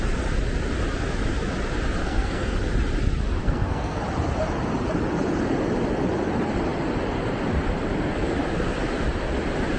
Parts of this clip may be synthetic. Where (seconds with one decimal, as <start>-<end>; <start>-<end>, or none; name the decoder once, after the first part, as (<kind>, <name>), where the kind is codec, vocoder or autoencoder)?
2.0-2.6 (codec, SNAC); 3.4-4.0